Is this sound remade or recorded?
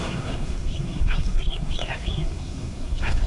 remade